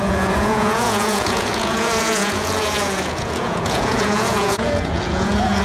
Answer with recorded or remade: remade